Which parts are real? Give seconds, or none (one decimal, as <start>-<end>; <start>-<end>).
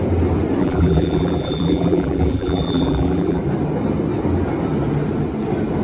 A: 0.0-0.6; 3.4-5.8